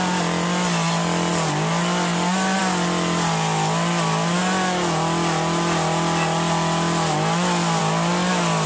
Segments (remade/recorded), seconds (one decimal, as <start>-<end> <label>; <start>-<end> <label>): 0.0-8.7 recorded